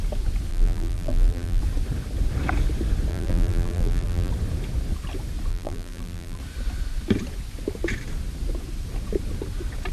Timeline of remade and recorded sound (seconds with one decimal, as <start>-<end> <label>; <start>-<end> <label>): 0.0-0.5 recorded; 0.5-1.6 remade; 1.6-3.1 recorded; 3.1-4.3 remade; 4.3-5.5 recorded; 5.5-6.4 remade; 6.4-9.9 recorded